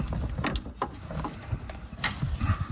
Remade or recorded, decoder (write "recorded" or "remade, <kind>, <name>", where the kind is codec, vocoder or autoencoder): recorded